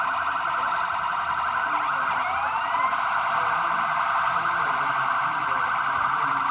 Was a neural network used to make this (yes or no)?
no